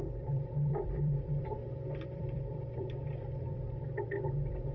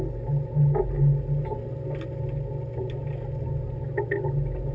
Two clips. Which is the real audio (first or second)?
second